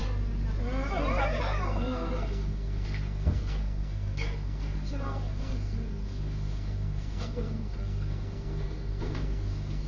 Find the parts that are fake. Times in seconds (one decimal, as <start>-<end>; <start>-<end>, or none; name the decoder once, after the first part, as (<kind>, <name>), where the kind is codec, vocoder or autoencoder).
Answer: 1.4-9.9 (codec, SNAC)